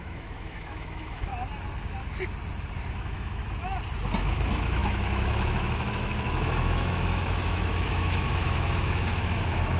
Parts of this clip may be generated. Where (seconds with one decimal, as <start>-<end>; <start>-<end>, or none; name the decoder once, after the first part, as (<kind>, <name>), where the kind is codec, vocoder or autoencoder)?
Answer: 0.0-1.3 (autoencoder, DAC-VAE); 2.9-3.4; 4.2-9.8